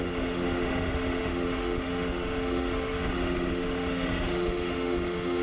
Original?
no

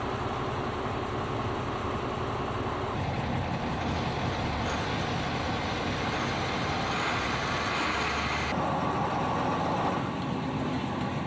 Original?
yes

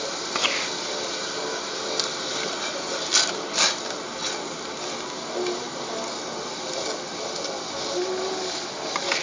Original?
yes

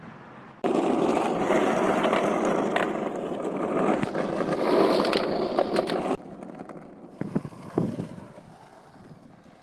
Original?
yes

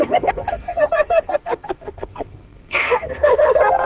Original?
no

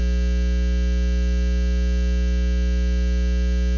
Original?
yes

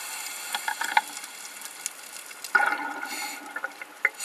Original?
yes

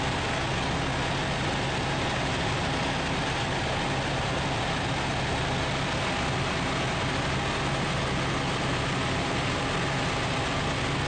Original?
yes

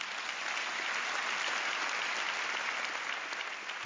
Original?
yes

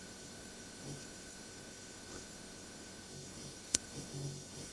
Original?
no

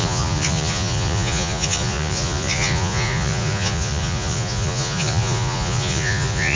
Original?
no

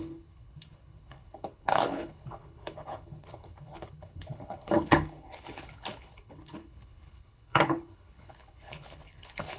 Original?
no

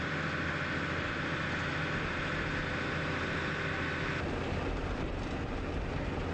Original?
yes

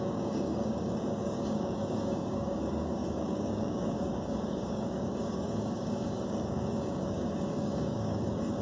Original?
no